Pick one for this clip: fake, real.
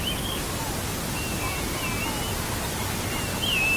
real